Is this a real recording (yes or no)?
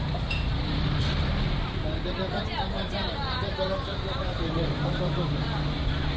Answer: no